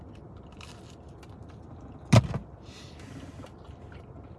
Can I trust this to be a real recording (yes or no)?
yes